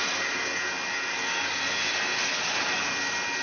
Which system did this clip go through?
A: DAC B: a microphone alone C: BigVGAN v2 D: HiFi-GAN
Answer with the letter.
B